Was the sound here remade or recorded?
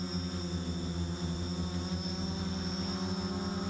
recorded